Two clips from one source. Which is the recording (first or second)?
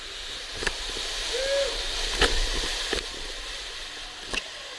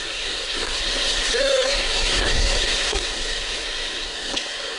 first